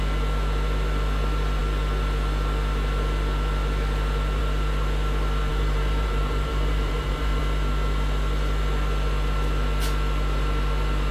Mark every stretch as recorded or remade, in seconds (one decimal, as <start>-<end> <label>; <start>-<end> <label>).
0.0-5.5 recorded; 5.5-7.4 remade; 7.4-11.1 recorded